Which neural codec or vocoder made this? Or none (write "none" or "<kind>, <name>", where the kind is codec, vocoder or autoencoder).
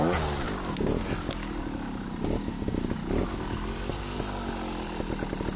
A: none